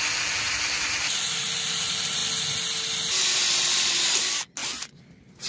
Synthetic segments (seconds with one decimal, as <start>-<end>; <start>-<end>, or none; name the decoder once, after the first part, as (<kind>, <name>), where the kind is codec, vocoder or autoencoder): none